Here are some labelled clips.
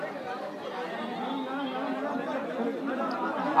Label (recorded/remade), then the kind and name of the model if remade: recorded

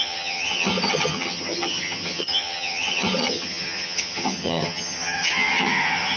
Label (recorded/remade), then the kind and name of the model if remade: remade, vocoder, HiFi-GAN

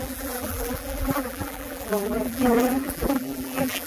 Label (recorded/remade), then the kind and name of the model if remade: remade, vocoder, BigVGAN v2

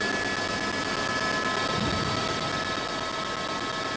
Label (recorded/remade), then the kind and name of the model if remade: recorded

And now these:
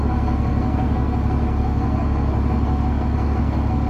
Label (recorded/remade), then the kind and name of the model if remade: remade, codec, SNAC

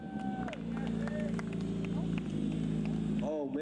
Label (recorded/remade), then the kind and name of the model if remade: recorded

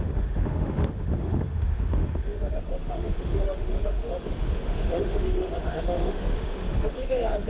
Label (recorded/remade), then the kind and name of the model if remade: remade, autoencoder, DAC-VAE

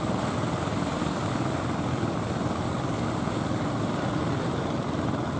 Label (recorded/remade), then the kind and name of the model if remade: recorded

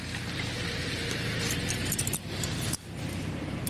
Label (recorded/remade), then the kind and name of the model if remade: recorded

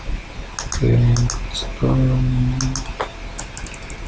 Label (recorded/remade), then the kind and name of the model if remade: recorded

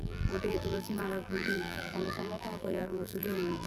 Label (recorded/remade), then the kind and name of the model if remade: remade, vocoder, BigVGAN v2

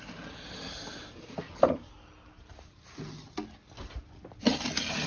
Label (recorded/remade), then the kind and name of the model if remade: recorded